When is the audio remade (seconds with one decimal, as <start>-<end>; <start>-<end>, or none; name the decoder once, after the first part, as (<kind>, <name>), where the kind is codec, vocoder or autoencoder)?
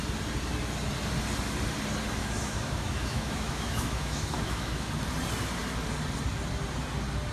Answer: 2.2-4.9 (autoencoder, DAC-VAE)